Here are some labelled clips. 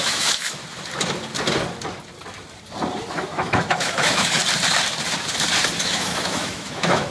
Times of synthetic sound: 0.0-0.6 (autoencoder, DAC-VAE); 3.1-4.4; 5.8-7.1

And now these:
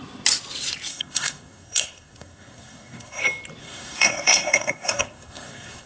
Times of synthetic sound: 0.9-3.2 (codec, SNAC); 3.6-5.9